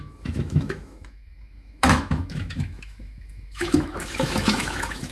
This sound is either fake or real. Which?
fake